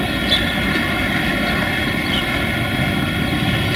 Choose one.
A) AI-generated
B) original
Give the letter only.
B